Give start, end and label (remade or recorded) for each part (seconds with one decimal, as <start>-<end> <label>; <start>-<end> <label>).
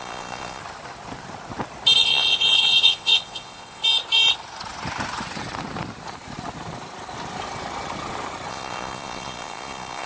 0.0-0.6 remade; 0.6-2.0 recorded; 2.0-3.8 remade; 3.8-8.5 recorded; 8.5-10.1 remade